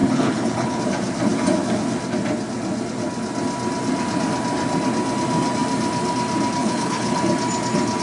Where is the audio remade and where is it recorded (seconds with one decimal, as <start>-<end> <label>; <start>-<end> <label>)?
0.0-0.8 remade; 0.8-6.6 recorded; 6.6-7.2 remade; 7.2-8.0 recorded